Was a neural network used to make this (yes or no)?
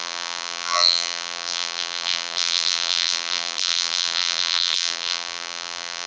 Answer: yes